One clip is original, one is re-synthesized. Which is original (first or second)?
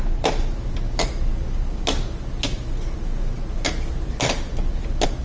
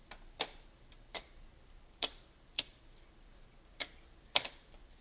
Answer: first